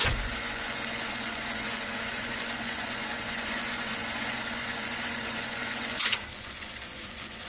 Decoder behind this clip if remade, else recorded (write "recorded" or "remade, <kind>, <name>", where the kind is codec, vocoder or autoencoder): remade, vocoder, Vocos